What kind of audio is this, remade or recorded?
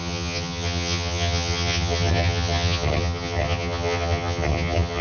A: remade